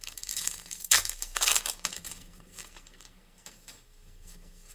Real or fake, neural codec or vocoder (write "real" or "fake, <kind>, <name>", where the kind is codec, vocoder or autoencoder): fake, codec, SNAC